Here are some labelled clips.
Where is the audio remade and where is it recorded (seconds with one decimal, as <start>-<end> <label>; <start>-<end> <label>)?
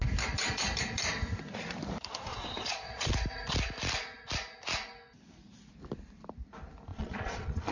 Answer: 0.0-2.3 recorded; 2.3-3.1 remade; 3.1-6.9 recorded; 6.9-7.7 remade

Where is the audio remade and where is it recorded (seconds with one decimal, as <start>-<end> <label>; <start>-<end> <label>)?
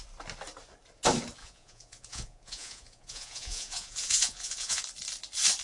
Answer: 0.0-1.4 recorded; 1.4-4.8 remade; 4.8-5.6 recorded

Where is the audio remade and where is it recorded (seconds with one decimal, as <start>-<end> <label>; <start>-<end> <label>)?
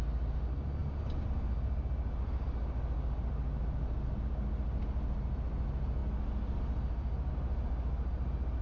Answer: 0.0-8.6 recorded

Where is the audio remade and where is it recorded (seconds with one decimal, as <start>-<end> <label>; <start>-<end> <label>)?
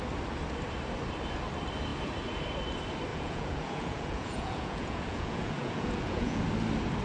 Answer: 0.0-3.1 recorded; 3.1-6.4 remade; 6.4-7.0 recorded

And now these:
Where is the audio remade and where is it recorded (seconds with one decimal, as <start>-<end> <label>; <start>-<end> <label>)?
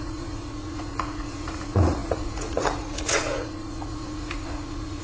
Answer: 0.0-5.0 remade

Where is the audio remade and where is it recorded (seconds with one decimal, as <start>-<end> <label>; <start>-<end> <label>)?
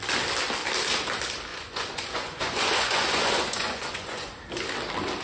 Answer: 0.0-1.5 recorded; 1.5-4.3 remade; 4.3-5.2 recorded